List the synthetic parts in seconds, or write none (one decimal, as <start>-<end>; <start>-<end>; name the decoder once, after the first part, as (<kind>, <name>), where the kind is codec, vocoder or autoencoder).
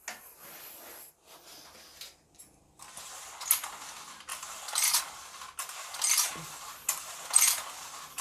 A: 2.6-3.3 (vocoder, BigVGAN v2); 4.3-5.0; 6.3-8.2